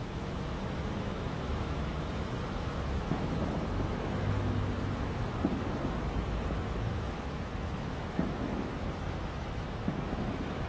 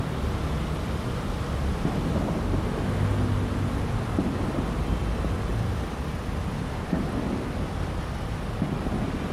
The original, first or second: second